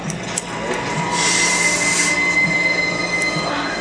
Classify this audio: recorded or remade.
recorded